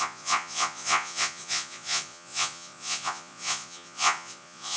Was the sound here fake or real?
fake